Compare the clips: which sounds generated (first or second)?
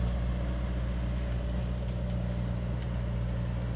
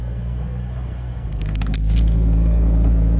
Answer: second